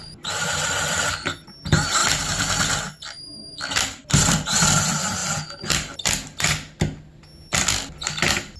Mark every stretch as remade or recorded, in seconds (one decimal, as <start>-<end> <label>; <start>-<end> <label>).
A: 0.0-2.0 recorded; 2.0-4.7 remade; 4.7-8.6 recorded